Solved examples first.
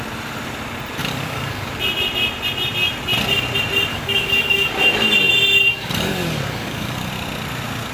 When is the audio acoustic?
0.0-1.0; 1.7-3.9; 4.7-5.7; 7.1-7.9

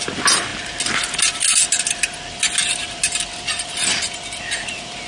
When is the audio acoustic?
0.0-5.1

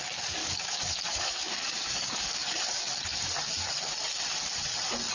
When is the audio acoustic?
0.0-0.4; 2.6-5.1

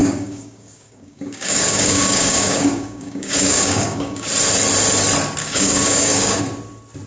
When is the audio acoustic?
4.3-5.4; 6.4-7.1

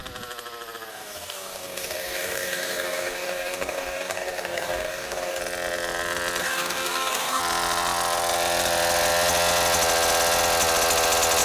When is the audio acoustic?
0.0-0.9; 5.4-6.4; 7.4-11.4

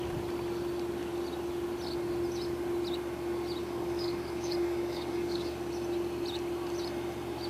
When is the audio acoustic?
0.0-3.6; 5.7-7.5